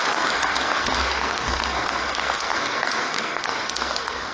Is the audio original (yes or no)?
no